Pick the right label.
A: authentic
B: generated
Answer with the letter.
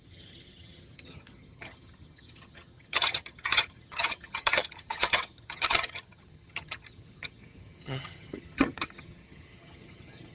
B